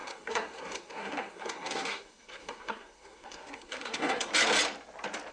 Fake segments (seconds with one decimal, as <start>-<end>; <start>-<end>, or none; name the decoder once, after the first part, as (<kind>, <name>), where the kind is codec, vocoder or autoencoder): 0.0-4.3 (codec, SNAC)